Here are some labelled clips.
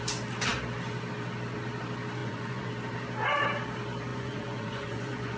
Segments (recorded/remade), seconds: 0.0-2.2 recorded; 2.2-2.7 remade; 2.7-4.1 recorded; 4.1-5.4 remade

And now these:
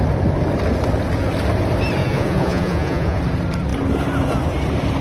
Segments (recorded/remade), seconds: 0.0-2.0 recorded; 2.0-3.2 remade; 3.2-5.0 recorded